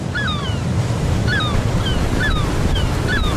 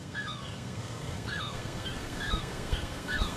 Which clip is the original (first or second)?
first